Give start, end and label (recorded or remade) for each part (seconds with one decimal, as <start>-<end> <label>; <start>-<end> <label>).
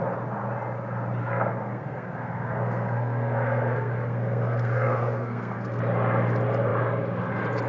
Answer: 0.0-1.2 recorded; 1.2-5.8 remade; 5.8-7.7 recorded